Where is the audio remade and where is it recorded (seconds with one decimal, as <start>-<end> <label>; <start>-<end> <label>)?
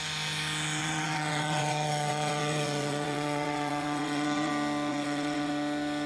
0.0-0.8 recorded; 0.8-4.5 remade; 4.5-4.9 recorded; 4.9-5.5 remade; 5.5-6.1 recorded